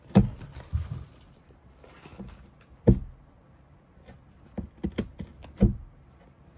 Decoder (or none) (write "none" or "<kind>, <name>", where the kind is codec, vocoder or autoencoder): none